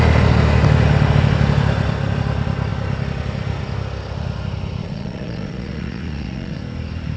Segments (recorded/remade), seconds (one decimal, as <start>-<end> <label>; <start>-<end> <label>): 0.0-4.8 recorded; 4.8-6.6 remade; 6.6-7.2 recorded